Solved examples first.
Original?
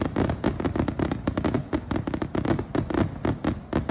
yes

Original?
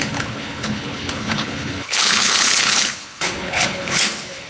no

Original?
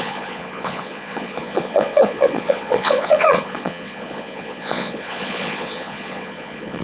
no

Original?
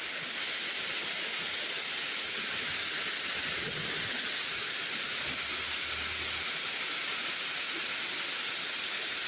yes